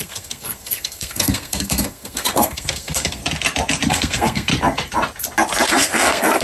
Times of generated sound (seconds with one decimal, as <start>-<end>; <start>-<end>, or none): 0.0-3.2; 3.9-4.5; 5.7-6.4